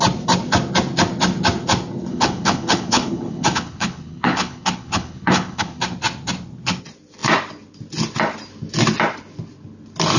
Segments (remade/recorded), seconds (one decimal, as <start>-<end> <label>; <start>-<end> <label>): 0.0-2.1 recorded; 2.1-5.8 remade; 5.8-10.2 recorded